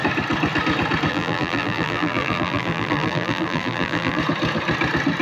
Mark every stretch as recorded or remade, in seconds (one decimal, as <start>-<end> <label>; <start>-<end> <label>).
0.0-1.1 recorded; 1.1-4.2 remade; 4.2-5.2 recorded